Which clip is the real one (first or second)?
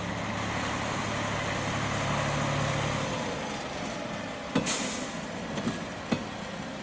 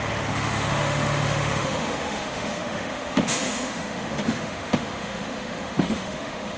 first